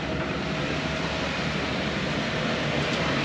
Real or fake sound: real